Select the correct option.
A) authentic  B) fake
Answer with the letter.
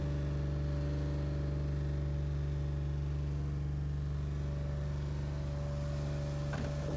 A